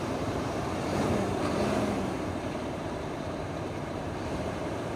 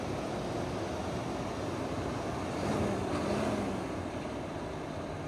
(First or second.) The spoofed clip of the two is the first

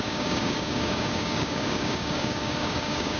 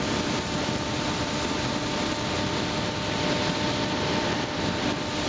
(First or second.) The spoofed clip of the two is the first